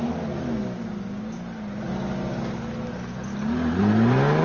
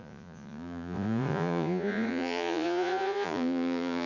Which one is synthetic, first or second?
second